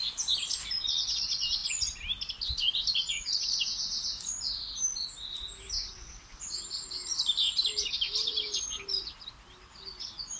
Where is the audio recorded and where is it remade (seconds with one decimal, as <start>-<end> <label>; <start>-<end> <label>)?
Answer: 0.0-10.4 recorded